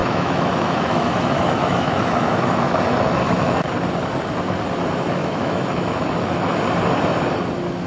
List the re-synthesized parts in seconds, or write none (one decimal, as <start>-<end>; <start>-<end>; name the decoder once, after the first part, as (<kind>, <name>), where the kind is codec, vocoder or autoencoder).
0.0-3.7 (autoencoder, DAC-VAE); 5.2-6.6